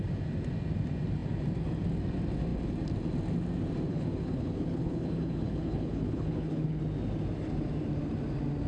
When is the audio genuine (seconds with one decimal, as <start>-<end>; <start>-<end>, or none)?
0.0-3.9; 6.8-8.7